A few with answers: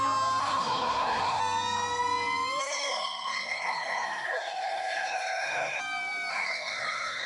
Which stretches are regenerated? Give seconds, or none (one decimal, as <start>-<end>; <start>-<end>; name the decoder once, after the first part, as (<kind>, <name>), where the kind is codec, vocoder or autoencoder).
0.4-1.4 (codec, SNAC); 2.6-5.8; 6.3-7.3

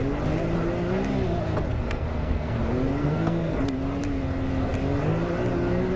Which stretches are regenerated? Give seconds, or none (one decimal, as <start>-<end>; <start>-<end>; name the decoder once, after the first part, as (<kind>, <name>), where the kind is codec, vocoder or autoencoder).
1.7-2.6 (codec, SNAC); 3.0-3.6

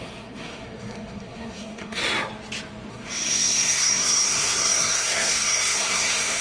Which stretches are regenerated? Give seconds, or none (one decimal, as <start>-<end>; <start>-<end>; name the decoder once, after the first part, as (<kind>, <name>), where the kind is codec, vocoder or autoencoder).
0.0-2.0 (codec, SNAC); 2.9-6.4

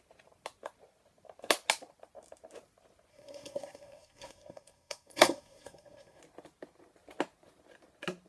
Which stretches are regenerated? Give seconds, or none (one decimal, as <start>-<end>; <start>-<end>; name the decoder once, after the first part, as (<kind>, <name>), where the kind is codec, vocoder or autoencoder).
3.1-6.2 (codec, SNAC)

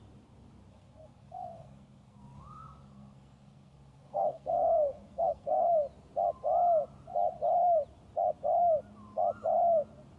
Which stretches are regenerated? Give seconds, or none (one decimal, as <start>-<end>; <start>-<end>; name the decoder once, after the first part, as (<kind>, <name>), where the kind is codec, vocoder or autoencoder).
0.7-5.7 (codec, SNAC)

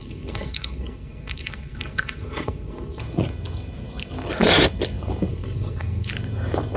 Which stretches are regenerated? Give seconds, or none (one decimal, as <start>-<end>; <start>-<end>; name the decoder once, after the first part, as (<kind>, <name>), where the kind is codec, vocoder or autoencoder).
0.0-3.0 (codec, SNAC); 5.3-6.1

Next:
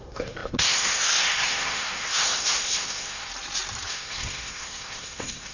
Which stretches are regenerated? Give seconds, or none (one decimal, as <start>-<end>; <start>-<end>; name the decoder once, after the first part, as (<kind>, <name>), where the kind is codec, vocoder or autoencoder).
0.0-3.3 (codec, SNAC); 3.9-5.5

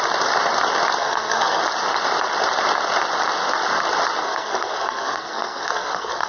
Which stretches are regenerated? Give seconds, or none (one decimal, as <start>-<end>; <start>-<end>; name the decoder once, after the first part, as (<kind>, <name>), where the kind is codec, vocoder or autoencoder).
1.0-1.6 (codec, SNAC); 4.2-6.3